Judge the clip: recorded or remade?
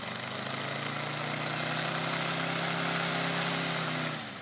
recorded